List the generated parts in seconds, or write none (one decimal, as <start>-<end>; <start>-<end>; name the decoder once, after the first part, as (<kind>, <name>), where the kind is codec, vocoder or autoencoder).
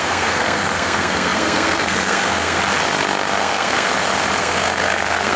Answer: 0.0-2.6 (codec, SNAC); 3.4-3.9; 4.4-5.4